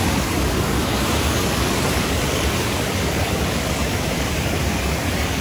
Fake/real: fake